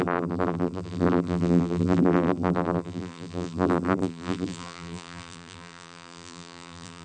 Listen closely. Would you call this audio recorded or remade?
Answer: remade